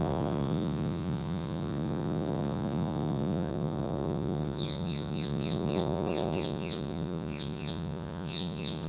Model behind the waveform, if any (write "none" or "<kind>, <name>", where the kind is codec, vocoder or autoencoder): vocoder, Vocos